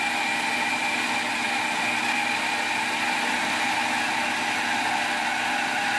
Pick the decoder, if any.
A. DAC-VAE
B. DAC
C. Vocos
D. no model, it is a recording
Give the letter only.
D